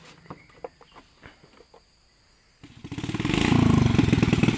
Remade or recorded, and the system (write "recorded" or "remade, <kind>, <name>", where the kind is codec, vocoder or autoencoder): recorded